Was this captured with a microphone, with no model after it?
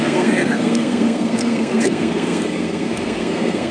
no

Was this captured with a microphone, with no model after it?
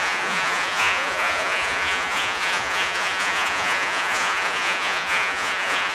no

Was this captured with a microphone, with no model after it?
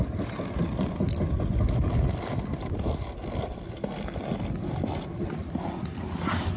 yes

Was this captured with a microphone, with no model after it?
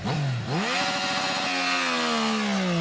yes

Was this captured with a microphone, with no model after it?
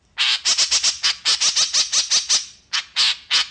yes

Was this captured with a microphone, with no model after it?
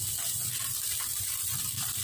no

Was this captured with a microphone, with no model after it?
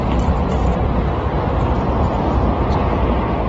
yes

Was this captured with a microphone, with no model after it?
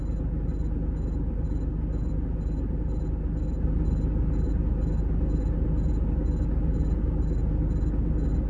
yes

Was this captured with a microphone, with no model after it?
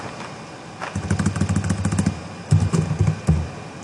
yes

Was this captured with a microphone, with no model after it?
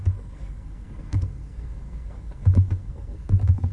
no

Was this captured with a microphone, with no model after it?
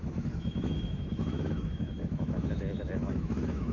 no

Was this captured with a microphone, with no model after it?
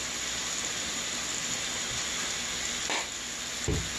yes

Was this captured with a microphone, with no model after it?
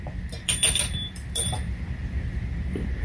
no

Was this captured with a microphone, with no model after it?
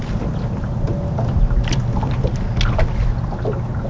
yes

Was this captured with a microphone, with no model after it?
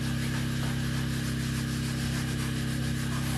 yes